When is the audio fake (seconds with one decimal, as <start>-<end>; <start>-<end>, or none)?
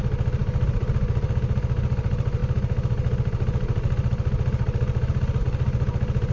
none